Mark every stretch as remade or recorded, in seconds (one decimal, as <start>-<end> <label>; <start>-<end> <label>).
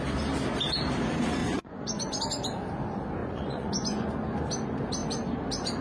0.0-1.4 recorded; 1.4-2.2 remade; 2.2-3.2 recorded; 3.2-4.1 remade; 4.1-5.8 recorded